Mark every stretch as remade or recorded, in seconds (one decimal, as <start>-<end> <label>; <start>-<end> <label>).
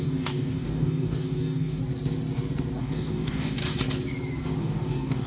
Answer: 0.0-1.8 remade; 1.8-2.8 recorded; 2.8-3.6 remade; 3.6-4.6 recorded; 4.6-5.3 remade